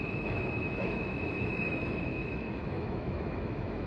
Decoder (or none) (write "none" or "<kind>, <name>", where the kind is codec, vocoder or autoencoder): autoencoder, DAC-VAE